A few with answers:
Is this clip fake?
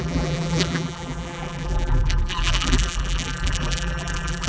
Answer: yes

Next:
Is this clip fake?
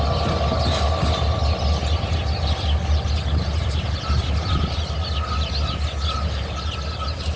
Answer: no